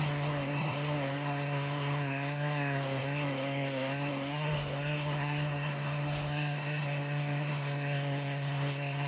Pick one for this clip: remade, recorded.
remade